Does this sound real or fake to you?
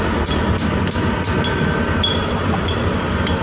real